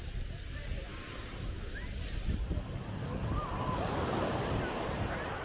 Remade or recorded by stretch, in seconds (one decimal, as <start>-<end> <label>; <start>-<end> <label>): 0.0-5.4 recorded